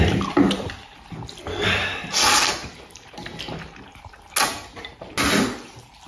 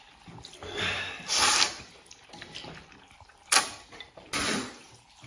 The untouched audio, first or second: first